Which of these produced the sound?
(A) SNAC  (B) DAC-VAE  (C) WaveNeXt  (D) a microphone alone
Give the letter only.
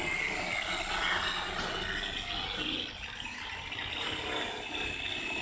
D